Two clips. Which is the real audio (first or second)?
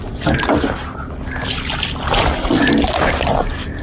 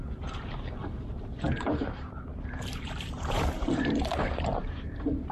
first